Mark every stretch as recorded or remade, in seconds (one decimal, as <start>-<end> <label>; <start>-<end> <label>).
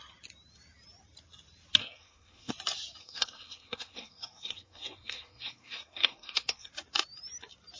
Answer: 0.0-1.8 recorded; 1.8-2.5 remade; 2.5-3.0 recorded; 3.0-6.7 remade; 6.7-7.8 recorded